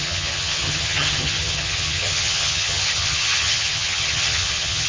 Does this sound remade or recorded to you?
remade